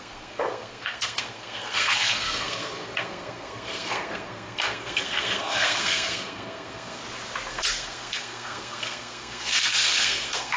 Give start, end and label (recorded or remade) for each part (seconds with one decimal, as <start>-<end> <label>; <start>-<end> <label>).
0.0-7.0 remade; 7.0-7.5 recorded; 7.5-10.6 remade